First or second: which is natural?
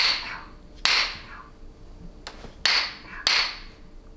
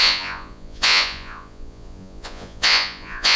first